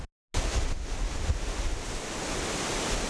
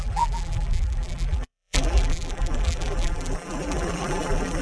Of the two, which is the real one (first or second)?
first